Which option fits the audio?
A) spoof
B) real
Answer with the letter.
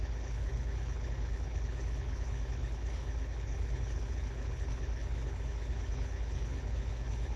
A